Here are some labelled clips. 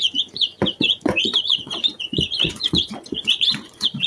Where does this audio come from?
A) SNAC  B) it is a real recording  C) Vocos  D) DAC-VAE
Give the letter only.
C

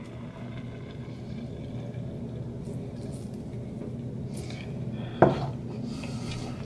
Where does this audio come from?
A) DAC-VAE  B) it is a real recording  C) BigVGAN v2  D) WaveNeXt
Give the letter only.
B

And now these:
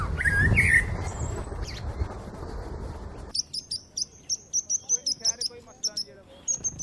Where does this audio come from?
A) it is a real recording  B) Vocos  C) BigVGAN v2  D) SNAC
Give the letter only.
A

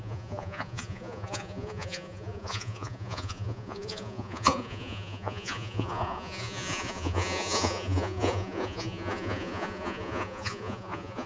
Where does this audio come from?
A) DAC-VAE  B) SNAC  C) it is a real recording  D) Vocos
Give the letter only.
D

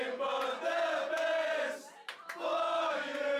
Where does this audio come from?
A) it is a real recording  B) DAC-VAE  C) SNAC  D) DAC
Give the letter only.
A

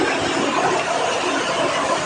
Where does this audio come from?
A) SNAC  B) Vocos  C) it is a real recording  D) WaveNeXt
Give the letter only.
C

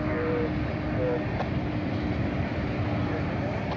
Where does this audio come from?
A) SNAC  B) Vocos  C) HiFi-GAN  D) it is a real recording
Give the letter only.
D